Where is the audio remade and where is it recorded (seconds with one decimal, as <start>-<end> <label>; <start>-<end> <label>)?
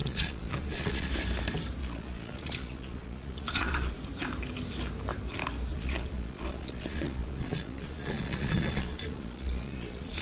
0.0-1.1 remade; 1.1-1.8 recorded; 1.8-3.9 remade; 3.9-5.7 recorded; 5.7-10.2 remade